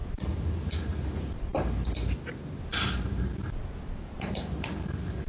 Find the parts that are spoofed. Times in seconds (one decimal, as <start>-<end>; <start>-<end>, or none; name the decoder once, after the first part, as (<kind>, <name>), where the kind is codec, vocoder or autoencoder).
4.0-4.5 (vocoder, BigVGAN v2)